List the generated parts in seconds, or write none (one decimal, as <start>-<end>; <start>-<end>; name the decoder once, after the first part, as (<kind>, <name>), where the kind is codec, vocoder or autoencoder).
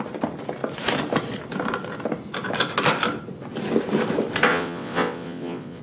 4.5-5.8 (vocoder, WaveNeXt)